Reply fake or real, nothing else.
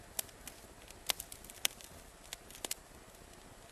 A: real